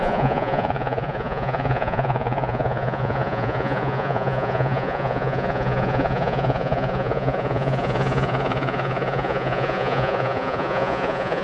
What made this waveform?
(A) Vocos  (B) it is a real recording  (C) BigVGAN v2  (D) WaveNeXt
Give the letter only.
A